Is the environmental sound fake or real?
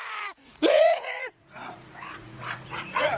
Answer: fake